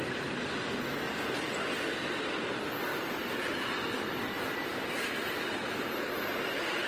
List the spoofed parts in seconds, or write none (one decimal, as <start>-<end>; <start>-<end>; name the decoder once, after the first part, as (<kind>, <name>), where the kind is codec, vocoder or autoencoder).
none